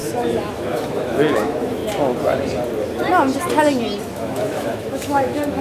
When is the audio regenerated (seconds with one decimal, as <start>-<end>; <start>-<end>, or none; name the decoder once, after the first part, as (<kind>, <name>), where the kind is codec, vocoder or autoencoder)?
0.0-1.8 (autoencoder, DAC-VAE); 4.1-5.6